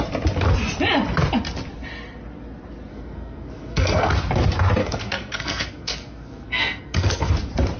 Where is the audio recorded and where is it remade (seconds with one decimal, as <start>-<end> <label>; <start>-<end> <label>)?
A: 0.0-2.9 recorded; 2.9-4.1 remade; 4.1-4.8 recorded; 4.8-7.3 remade; 7.3-7.8 recorded